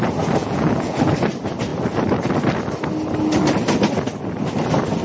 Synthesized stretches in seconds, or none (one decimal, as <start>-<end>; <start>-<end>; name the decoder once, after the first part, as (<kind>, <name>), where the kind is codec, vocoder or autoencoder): 0.4-1.0 (vocoder, Vocos)